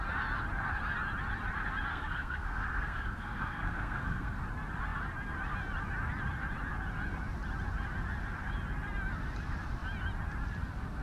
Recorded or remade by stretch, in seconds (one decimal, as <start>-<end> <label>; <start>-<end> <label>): 0.0-1.9 recorded; 1.9-4.4 remade; 4.4-11.0 recorded